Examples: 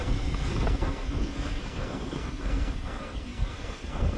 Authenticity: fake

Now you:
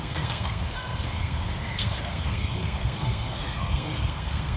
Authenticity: fake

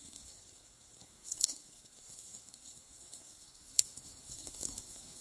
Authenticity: fake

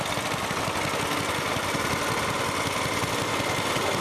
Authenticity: real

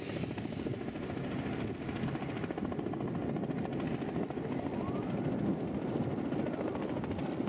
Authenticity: real